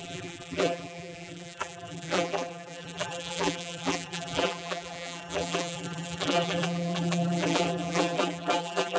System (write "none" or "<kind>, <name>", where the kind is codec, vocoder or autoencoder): vocoder, BigVGAN v2